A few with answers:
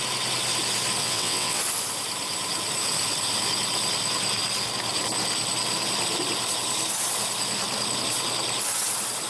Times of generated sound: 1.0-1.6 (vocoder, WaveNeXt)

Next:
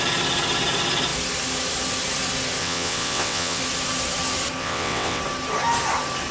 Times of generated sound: 2.6-3.6 (vocoder, WaveNeXt); 4.6-5.2